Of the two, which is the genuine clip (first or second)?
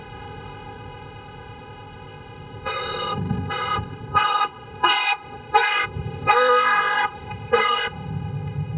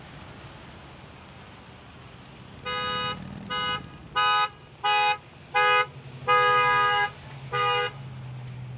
second